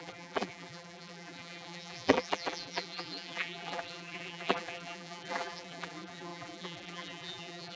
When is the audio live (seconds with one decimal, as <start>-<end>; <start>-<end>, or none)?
none